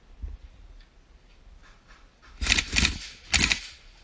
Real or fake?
real